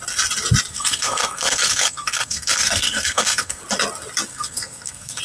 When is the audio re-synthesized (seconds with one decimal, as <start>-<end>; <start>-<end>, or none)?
0.7-3.6; 4.3-5.2